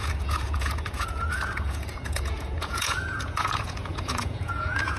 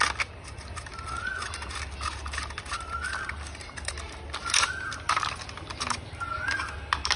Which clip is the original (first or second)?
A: second